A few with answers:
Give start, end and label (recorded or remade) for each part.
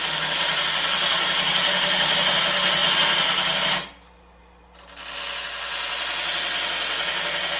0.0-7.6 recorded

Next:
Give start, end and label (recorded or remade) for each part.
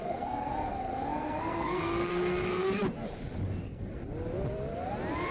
0.0-2.8 remade; 2.8-3.6 recorded; 3.6-4.0 remade; 4.0-5.3 recorded